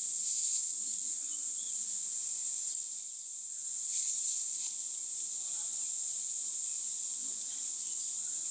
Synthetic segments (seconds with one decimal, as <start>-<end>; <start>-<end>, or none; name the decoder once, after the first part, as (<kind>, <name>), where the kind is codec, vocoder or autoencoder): 3.3-4.8 (vocoder, BigVGAN v2)